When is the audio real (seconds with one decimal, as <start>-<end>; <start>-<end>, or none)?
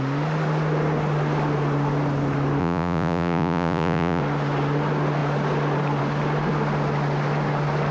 0.0-2.6; 4.2-7.9